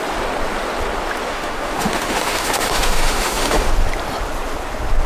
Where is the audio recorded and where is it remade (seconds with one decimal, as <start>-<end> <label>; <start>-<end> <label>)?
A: 0.0-1.3 recorded; 1.3-3.7 remade; 3.7-5.1 recorded